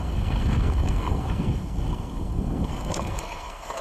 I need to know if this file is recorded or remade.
remade